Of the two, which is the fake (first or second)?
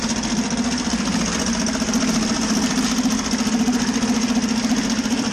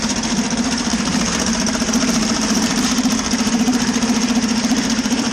second